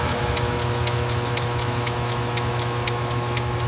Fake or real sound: fake